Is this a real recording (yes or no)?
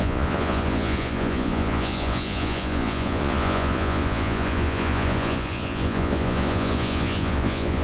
no